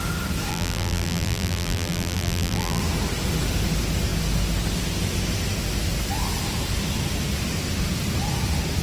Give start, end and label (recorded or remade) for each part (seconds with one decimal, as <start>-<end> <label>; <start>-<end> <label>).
0.0-0.5 recorded; 0.5-2.8 remade; 2.8-8.8 recorded